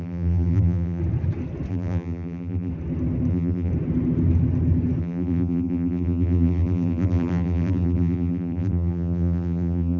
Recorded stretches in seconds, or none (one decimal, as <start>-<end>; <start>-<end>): 1.0-1.7; 2.7-3.3; 3.7-5.0